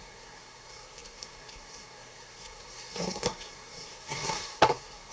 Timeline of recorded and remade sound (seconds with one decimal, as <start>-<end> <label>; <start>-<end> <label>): 0.0-5.1 remade